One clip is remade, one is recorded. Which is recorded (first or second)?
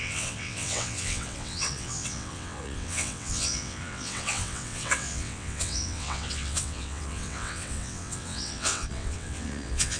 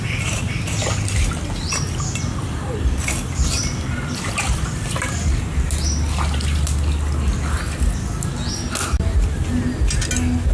second